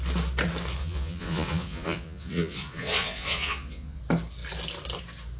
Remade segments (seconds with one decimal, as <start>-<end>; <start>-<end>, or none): 0.8-4.0